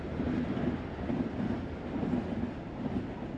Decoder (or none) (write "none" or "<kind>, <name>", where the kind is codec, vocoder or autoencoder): none